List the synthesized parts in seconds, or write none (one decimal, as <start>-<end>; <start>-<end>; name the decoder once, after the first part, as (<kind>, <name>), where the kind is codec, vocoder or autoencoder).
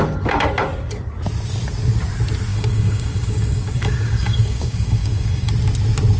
2.5-5.5 (codec, DAC)